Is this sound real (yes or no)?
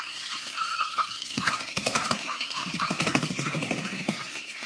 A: no